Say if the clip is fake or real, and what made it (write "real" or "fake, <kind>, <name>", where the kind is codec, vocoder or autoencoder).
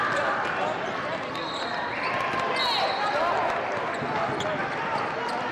real